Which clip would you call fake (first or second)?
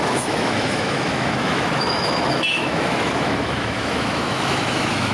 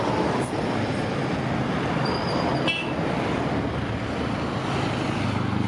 first